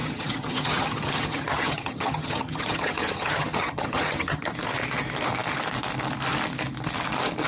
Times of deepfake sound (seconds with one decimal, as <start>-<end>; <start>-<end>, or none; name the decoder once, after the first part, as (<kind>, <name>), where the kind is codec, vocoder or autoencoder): 0.0-4.5 (vocoder, HiFi-GAN)